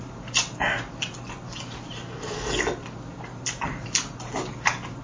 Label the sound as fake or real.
real